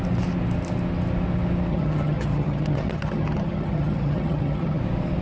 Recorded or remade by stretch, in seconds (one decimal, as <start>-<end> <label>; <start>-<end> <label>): 0.0-1.7 recorded; 1.7-4.8 remade; 4.8-5.2 recorded